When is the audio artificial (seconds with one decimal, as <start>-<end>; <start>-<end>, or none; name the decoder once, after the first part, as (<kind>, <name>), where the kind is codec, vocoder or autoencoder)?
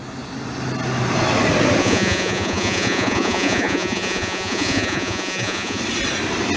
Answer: 1.8-5.8 (vocoder, Vocos)